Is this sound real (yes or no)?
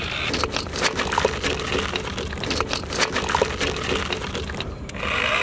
yes